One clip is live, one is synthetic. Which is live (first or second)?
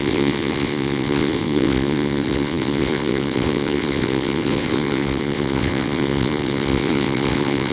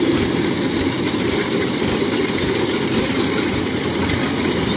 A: second